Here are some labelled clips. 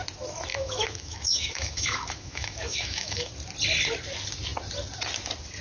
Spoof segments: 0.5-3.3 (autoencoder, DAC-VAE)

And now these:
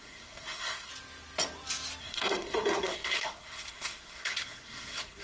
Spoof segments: 0.0-0.9 (codec, SNAC); 2.0-5.2

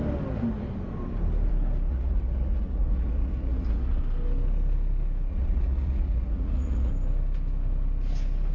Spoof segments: 1.9-4.0 (vocoder, Vocos); 5.3-6.9

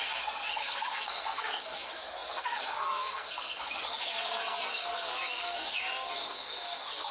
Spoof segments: 0.0-7.1 (codec, SNAC)

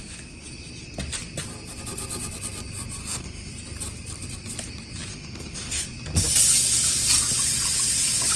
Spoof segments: 3.0-3.5 (autoencoder, DAC-VAE); 5.1-5.8